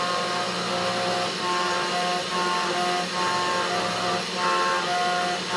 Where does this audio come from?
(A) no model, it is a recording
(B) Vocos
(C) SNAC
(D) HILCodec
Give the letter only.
A